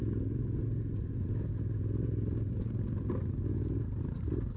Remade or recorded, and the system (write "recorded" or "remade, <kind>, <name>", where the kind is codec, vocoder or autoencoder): recorded